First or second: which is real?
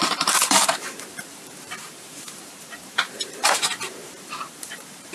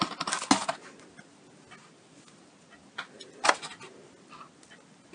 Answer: second